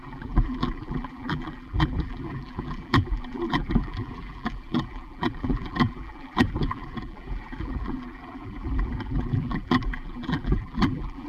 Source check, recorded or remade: remade